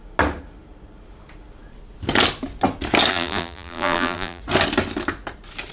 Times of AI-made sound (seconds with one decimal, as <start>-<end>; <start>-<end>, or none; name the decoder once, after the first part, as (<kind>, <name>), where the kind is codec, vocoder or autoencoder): 3.1-4.4 (vocoder, BigVGAN v2)